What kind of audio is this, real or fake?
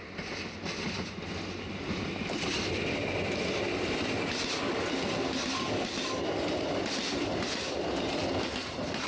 real